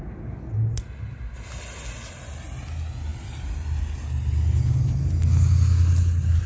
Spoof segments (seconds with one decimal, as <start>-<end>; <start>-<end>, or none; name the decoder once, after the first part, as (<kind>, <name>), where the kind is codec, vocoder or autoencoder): none